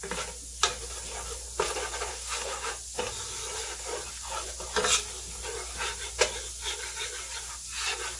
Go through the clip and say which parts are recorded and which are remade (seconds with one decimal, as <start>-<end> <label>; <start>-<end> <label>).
0.0-2.1 recorded; 2.1-2.7 remade; 2.7-8.2 recorded